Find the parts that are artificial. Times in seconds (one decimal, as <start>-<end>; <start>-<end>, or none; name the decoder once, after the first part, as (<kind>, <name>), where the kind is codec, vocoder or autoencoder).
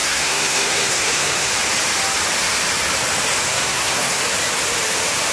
0.0-1.5 (codec, SNAC); 3.5-4.2